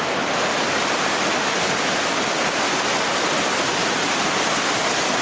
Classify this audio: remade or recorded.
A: recorded